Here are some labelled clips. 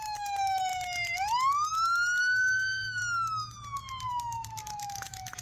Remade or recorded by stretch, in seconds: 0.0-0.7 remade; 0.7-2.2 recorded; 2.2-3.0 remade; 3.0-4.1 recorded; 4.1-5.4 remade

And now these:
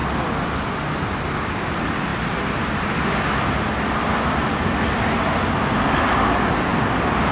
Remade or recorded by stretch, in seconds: 0.0-7.3 recorded

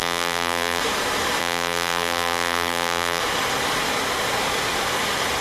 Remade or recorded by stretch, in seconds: 0.0-0.8 remade; 0.8-1.4 recorded; 1.4-3.2 remade; 3.2-5.4 recorded

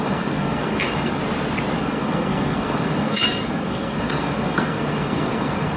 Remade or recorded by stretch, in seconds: 0.0-1.2 remade; 1.2-1.8 recorded; 1.8-5.8 remade

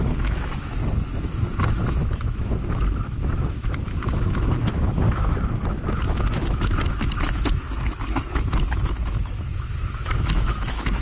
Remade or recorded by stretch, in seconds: 0.0-0.8 remade; 0.8-1.7 recorded; 1.7-11.0 remade

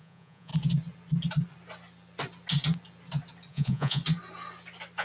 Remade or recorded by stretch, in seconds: 0.0-0.5 remade; 0.5-3.5 recorded; 3.5-4.0 remade; 4.0-5.0 recorded